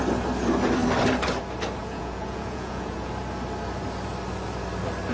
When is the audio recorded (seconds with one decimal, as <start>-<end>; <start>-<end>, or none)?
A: 0.0-1.8; 3.1-5.1